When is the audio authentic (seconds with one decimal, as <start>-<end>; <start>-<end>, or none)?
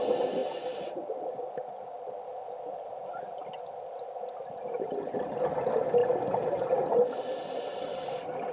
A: 0.0-0.4; 2.1-6.0; 6.7-8.5